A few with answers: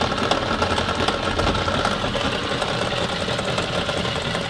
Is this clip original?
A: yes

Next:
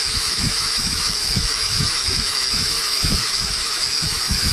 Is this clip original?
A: no